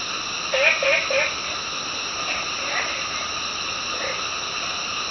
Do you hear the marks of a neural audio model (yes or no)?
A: no